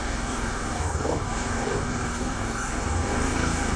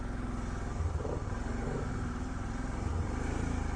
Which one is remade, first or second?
first